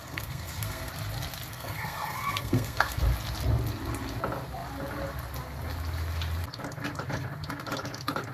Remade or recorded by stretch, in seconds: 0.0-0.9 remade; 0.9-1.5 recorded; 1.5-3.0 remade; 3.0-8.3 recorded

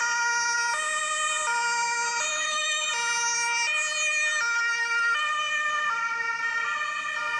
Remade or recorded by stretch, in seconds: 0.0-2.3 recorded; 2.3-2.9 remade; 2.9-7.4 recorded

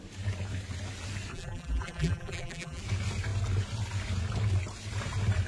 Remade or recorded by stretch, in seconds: 0.0-1.3 recorded; 1.3-2.8 remade; 2.8-5.5 recorded

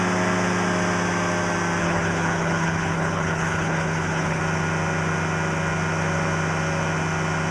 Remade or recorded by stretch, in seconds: 0.0-1.8 recorded; 1.8-4.4 remade; 4.4-7.5 recorded

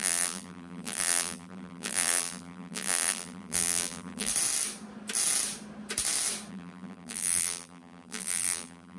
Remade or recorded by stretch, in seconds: 0.0-4.3 remade; 4.3-6.5 recorded; 6.5-9.0 remade

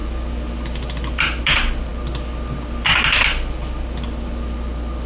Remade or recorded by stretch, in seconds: 0.0-5.1 recorded

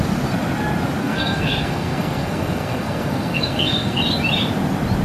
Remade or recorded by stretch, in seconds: 0.0-1.0 recorded; 1.0-4.0 remade; 4.0-5.0 recorded

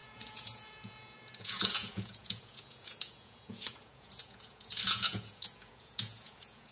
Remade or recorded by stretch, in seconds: 0.0-6.7 remade